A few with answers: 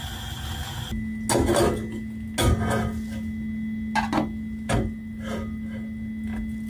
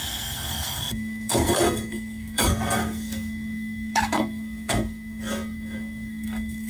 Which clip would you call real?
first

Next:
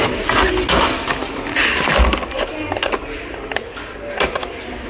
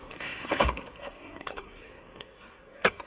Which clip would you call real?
first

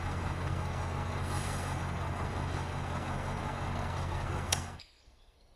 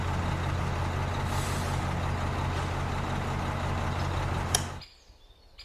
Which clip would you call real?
second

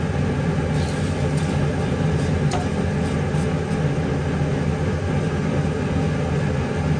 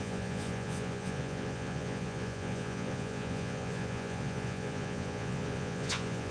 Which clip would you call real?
first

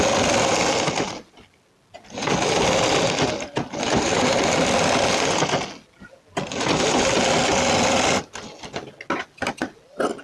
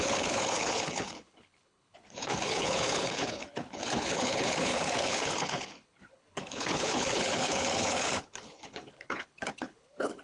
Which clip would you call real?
first